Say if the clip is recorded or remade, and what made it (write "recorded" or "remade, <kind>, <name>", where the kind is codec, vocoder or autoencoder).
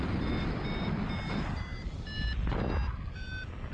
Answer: recorded